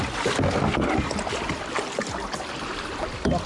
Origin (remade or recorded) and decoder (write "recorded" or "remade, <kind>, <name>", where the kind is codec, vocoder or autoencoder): recorded